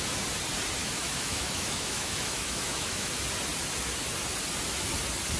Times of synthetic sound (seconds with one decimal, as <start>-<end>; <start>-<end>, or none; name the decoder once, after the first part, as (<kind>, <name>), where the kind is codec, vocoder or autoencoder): 0.8-3.1 (autoencoder, DAC-VAE)